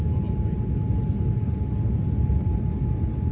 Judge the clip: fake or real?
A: real